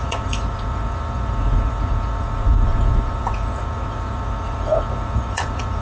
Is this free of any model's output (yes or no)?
no